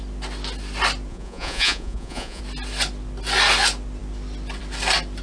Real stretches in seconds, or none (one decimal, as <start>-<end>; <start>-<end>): 0.0-1.1; 2.4-5.2

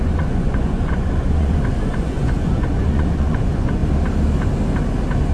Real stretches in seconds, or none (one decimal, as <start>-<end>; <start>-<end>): 3.8-5.3

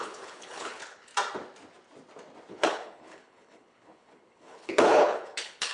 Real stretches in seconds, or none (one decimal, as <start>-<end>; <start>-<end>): 1.1-2.5

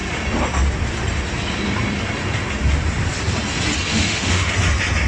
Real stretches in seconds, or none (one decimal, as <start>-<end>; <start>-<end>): 0.0-3.9; 4.5-5.1